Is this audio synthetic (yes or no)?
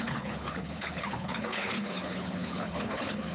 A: yes